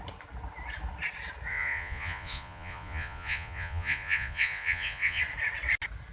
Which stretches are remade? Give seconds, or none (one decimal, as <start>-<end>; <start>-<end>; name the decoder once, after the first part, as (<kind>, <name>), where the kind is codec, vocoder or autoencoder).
1.5-5.2 (vocoder, Vocos)

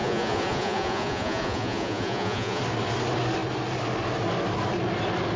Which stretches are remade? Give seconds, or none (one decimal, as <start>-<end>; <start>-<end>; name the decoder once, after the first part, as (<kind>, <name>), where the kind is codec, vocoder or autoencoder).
0.0-2.6 (vocoder, Vocos)

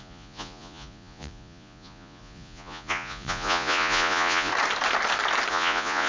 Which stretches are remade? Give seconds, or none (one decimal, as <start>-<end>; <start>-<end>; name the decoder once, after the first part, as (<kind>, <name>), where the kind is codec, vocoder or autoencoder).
0.0-4.5 (vocoder, Vocos); 5.5-6.1

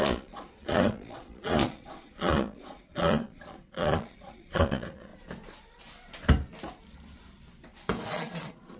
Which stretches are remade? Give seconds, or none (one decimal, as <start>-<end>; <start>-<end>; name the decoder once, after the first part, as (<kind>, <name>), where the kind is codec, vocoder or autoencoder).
0.0-5.1 (vocoder, Vocos); 8.1-8.8